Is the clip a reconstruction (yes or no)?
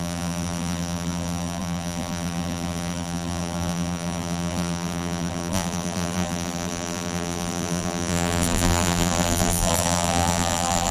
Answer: yes